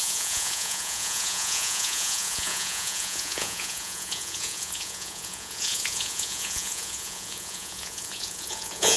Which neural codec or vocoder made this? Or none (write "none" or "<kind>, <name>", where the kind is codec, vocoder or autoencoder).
vocoder, Vocos